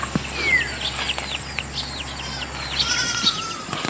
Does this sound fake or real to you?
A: real